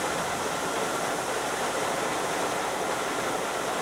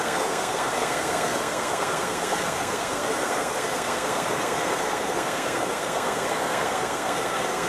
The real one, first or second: first